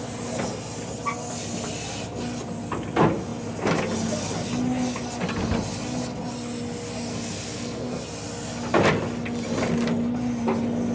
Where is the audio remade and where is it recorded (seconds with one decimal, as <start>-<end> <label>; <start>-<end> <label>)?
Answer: 0.0-7.1 recorded; 7.1-8.0 remade; 8.0-10.9 recorded

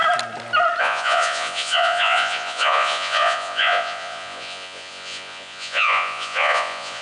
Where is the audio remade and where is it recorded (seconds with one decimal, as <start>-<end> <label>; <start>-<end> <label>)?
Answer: 0.0-0.8 recorded; 0.8-7.0 remade

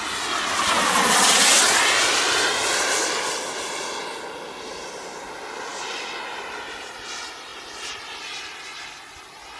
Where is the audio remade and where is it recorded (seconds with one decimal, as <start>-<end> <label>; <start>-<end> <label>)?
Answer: 0.0-9.6 recorded

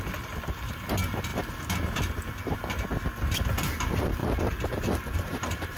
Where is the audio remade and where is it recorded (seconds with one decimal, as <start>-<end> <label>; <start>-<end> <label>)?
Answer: 0.0-1.3 recorded; 1.3-2.0 remade; 2.0-4.2 recorded; 4.2-5.8 remade

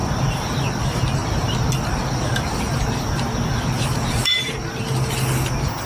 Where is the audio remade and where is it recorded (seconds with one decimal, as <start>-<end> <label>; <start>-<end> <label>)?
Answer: 0.0-5.9 recorded